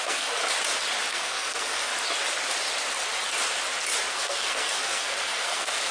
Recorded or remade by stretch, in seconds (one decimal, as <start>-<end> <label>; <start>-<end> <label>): 0.0-0.4 remade; 0.4-1.1 recorded; 1.1-1.9 remade; 1.9-4.1 recorded; 4.1-5.9 remade